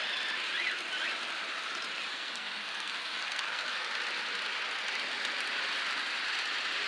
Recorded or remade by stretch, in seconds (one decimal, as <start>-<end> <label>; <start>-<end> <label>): 0.0-2.1 recorded; 2.1-3.9 remade; 3.9-6.9 recorded